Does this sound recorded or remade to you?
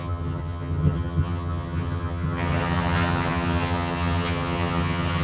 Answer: remade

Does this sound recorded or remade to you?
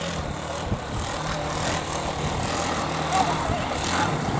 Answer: recorded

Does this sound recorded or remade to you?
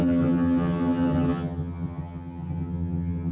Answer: remade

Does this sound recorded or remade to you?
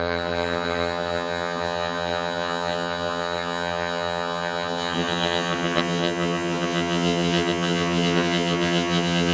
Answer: remade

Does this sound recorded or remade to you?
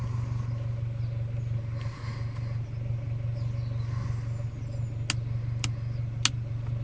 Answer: recorded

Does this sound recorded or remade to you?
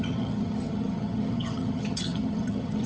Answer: remade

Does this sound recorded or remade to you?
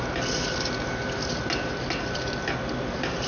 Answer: recorded